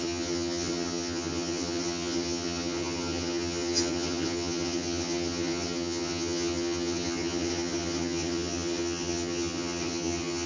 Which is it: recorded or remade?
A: remade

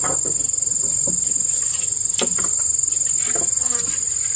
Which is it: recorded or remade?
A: recorded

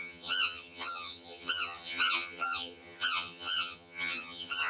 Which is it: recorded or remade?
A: remade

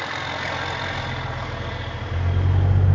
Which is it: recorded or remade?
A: recorded